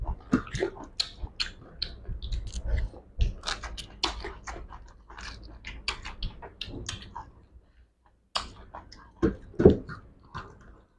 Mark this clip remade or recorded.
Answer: recorded